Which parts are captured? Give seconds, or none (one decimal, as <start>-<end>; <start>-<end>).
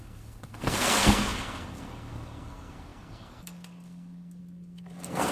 none